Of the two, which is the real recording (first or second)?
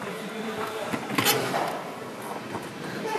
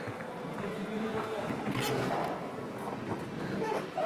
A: second